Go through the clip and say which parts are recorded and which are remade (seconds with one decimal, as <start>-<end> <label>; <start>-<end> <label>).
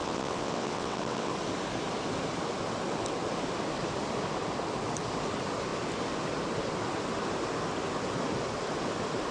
0.0-1.3 remade; 1.3-9.3 recorded